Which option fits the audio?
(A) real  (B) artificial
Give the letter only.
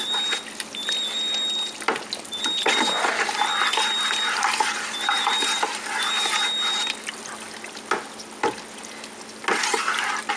A